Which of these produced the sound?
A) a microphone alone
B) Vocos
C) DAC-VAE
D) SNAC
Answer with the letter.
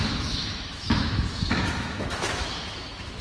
C